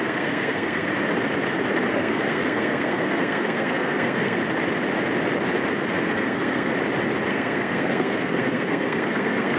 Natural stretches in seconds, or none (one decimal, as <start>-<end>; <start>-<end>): 0.9-1.9; 4.4-6.0; 6.7-7.3